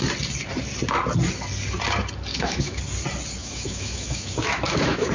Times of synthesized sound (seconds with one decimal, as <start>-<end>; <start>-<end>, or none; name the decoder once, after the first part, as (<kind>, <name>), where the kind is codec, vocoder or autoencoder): 2.3-2.8 (autoencoder, DAC-VAE); 3.4-5.1